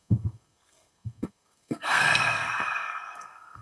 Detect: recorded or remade remade